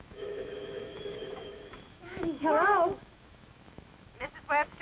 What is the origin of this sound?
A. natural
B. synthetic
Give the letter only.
B